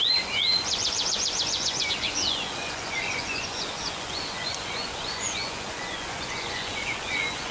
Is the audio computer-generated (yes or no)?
yes